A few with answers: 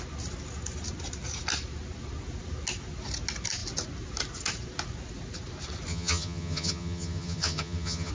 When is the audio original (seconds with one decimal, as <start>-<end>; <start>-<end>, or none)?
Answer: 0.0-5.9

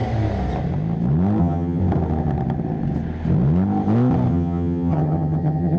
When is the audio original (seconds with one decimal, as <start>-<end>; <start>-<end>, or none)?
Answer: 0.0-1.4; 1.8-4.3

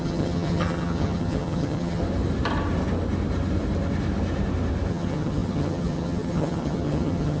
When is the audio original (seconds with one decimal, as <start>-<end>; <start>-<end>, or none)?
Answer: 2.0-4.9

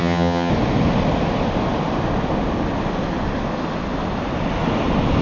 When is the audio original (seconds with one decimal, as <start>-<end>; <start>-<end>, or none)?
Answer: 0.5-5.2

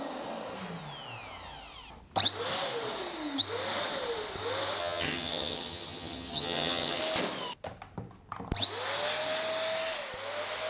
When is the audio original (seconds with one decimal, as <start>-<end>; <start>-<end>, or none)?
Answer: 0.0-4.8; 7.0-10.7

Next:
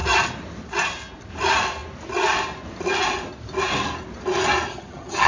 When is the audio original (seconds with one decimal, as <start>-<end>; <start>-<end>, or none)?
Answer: 0.0-4.7

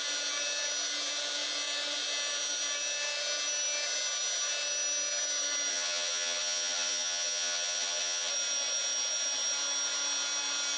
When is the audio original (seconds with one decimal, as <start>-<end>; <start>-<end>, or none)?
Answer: 0.0-5.7; 8.3-10.8

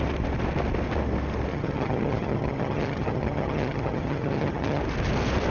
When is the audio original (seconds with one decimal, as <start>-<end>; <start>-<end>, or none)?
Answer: 0.0-1.5; 4.8-5.5